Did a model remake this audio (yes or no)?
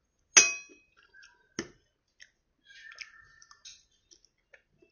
no